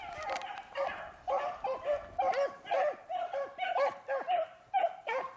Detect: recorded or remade recorded